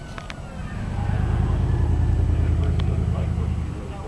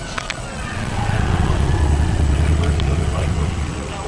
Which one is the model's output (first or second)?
second